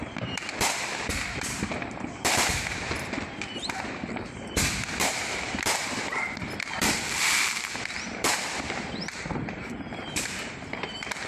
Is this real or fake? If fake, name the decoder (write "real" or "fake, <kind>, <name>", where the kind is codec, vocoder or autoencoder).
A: fake, vocoder, BigVGAN v2